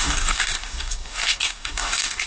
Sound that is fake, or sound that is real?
fake